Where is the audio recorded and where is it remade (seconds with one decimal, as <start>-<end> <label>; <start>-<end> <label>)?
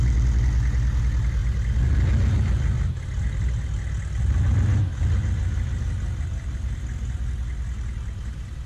0.0-8.7 recorded